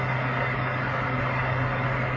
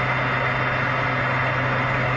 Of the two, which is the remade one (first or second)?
first